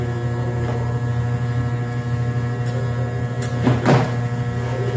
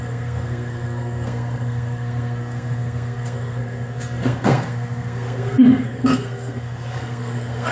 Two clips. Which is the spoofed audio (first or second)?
second